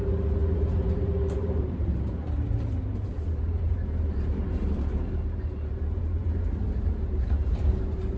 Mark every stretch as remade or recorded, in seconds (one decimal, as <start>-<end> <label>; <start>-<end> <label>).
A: 0.0-8.2 remade